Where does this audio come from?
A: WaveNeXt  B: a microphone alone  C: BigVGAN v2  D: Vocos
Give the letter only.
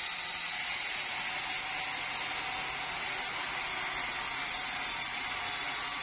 B